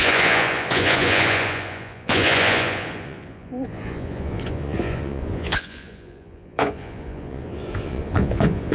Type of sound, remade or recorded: remade